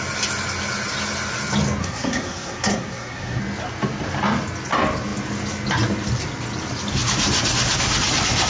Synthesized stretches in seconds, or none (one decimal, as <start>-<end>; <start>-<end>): 1.8-3.4